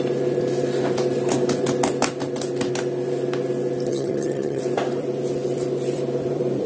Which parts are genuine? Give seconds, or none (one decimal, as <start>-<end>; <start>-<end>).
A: 0.0-3.9; 4.6-6.7